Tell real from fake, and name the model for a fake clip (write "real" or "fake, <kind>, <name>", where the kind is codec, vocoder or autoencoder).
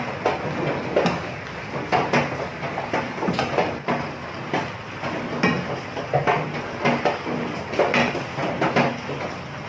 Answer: real